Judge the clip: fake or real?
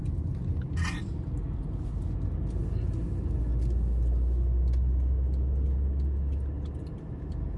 real